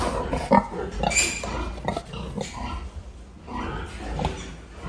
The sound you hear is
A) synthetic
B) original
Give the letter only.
B